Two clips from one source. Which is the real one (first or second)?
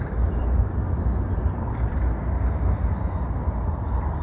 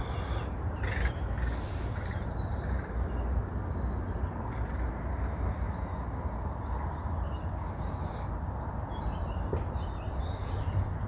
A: second